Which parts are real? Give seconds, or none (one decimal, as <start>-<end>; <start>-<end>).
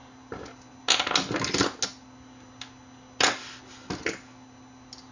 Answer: 0.0-5.1